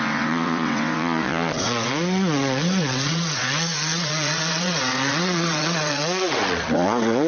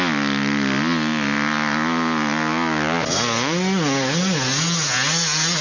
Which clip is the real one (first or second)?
second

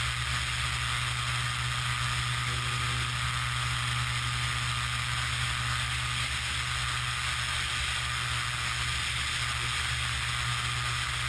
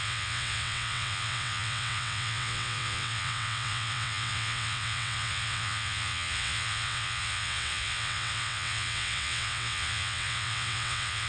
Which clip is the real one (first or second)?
first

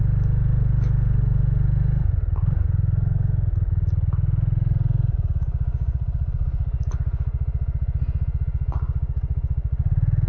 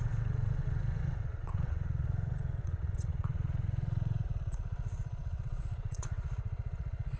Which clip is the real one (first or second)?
first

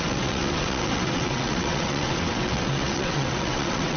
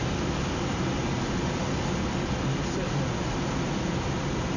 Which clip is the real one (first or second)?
second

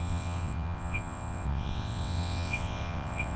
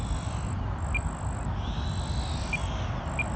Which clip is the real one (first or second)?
second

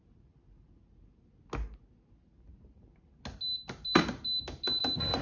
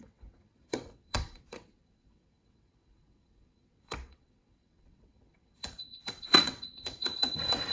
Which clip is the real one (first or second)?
first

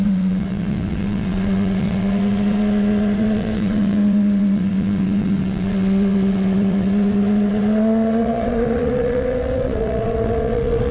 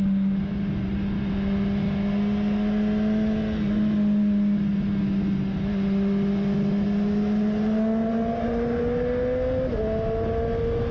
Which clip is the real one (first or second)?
second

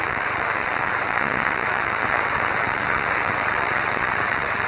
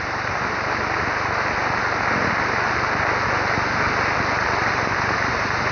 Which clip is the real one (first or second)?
second